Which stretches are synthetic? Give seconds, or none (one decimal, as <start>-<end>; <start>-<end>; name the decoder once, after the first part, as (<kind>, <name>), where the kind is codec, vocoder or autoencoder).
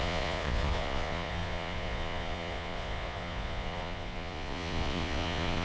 0.0-5.6 (vocoder, Vocos)